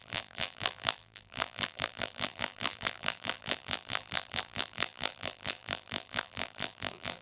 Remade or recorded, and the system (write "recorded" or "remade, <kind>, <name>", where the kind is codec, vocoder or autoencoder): remade, vocoder, BigVGAN v2